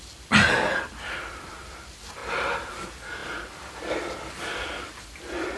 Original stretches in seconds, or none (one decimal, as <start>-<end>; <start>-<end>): 2.2-2.7